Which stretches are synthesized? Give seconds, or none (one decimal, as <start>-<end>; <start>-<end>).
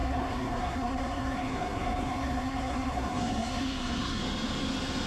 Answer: 0.0-4.2